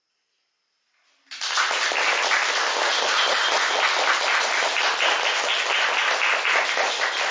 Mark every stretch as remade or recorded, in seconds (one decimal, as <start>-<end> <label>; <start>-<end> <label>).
0.0-7.3 recorded